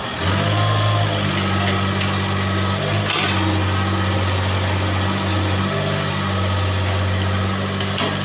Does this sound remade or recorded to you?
recorded